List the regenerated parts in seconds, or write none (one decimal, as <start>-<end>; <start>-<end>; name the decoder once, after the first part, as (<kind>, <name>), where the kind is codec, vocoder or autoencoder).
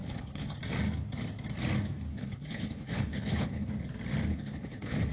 0.0-0.6 (codec, HILCodec); 2.1-3.7; 4.3-5.1